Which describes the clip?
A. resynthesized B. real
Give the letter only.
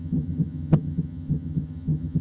A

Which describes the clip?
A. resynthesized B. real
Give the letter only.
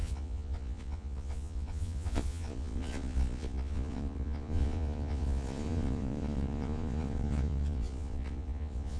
A